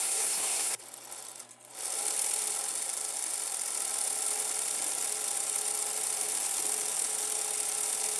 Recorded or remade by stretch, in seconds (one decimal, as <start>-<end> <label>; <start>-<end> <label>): 0.0-0.8 remade; 0.8-8.2 recorded